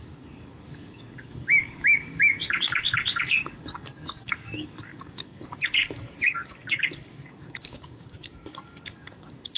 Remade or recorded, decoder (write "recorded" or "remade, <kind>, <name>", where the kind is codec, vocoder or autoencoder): remade, codec, DAC